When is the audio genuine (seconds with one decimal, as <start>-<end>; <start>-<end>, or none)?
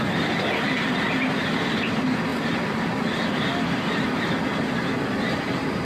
0.0-5.8